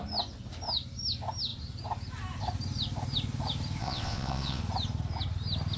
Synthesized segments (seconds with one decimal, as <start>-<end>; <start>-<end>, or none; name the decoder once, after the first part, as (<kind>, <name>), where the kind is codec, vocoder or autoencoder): 3.8-4.6 (vocoder, WaveNeXt)